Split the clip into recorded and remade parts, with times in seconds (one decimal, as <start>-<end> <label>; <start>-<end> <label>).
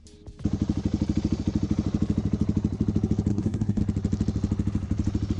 0.0-3.3 recorded; 3.3-3.8 remade; 3.8-5.4 recorded